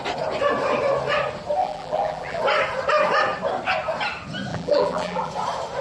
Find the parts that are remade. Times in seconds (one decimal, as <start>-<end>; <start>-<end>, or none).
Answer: 1.6-2.4; 4.5-5.3